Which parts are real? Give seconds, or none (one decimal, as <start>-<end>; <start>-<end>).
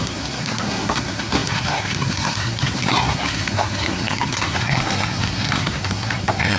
none